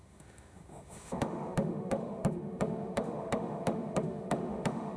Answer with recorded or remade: remade